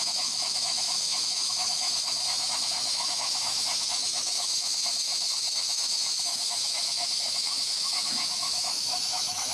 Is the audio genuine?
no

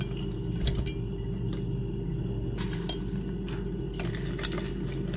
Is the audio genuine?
yes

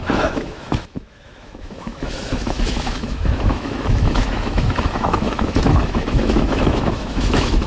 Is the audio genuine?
no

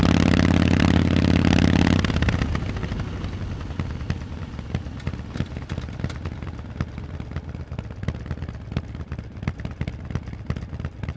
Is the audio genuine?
yes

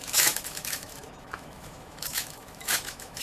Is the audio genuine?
no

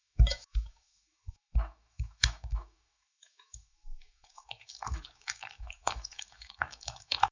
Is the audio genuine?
no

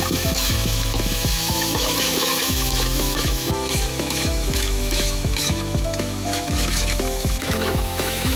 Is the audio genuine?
no